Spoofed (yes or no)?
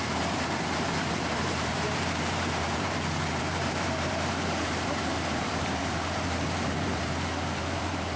yes